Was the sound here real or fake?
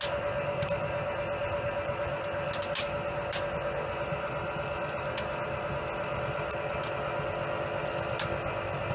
real